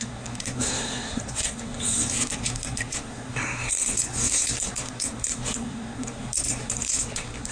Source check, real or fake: fake